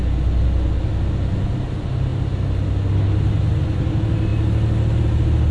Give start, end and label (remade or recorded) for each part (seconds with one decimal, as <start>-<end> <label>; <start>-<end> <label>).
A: 0.0-5.5 recorded